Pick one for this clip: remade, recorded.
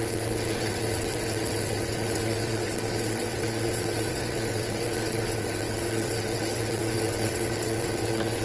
remade